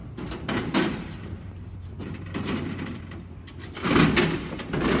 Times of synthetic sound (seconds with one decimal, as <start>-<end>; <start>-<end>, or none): 0.0-3.0

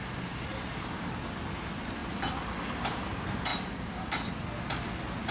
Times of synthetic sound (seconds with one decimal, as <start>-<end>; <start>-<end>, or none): 0.5-1.1